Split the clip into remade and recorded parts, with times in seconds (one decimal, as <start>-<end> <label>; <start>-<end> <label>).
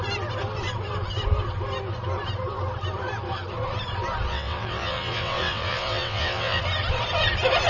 0.0-4.3 recorded; 4.3-6.6 remade; 6.6-7.7 recorded